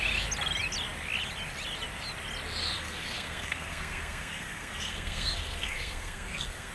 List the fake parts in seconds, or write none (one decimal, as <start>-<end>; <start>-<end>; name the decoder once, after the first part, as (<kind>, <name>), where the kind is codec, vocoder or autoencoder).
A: 2.6-6.7 (codec, SNAC)